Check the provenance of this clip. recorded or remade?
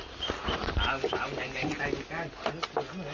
recorded